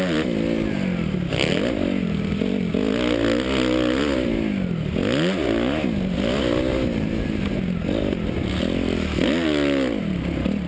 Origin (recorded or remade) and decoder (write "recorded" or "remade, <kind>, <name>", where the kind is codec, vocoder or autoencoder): recorded